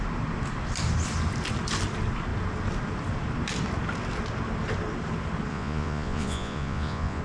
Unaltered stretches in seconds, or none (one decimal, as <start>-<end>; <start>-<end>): 0.0-5.5